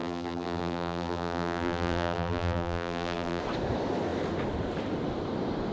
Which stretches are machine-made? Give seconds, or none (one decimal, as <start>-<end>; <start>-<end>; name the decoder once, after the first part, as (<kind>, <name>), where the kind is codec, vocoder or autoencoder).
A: 0.0-3.4 (vocoder, BigVGAN v2)